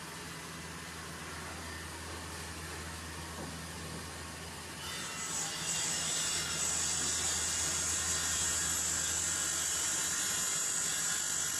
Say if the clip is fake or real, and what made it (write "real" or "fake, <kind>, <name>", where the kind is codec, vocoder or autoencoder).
real